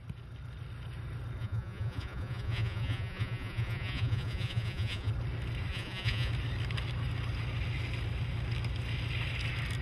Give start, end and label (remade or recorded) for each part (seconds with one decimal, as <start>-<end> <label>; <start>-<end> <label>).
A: 0.0-1.4 recorded; 1.4-5.1 remade; 5.1-5.7 recorded; 5.7-6.3 remade; 6.3-9.8 recorded